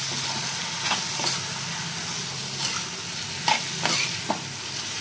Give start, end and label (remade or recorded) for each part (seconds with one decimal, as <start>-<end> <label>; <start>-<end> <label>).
0.0-5.0 recorded